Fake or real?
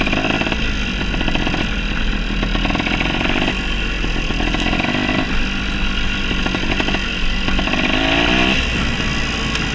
real